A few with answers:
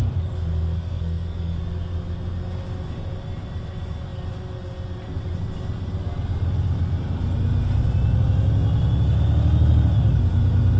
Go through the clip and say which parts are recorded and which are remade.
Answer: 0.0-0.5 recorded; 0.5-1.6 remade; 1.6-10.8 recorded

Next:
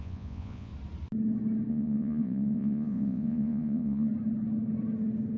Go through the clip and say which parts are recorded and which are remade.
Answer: 0.0-0.7 remade; 0.7-1.7 recorded; 1.7-4.1 remade; 4.1-5.4 recorded

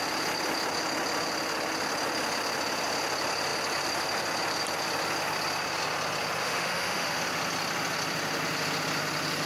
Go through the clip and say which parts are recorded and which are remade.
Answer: 0.0-6.4 recorded; 6.4-7.2 remade; 7.2-9.5 recorded

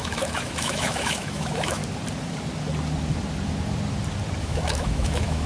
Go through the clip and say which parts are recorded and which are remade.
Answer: 0.0-1.8 remade; 1.8-4.4 recorded; 4.4-5.5 remade

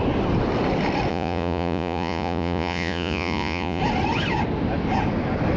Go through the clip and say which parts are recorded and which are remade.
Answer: 0.0-1.1 recorded; 1.1-3.8 remade; 3.8-5.6 recorded

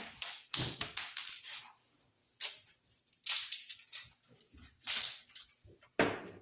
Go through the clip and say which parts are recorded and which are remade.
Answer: 0.0-6.4 recorded